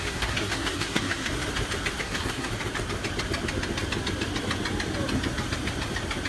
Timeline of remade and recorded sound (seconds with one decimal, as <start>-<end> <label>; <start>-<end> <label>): 0.0-1.3 remade; 1.3-2.0 recorded; 2.0-2.5 remade; 2.5-6.3 recorded